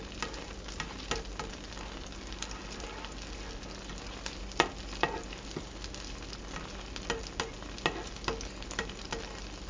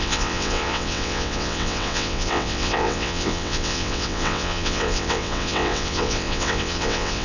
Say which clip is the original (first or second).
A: first